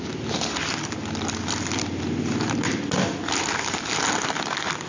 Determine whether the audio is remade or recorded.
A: recorded